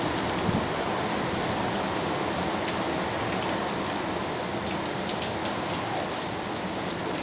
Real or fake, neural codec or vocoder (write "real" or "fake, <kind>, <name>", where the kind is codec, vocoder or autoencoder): real